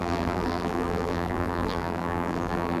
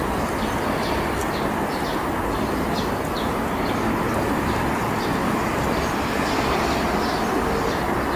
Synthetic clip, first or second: first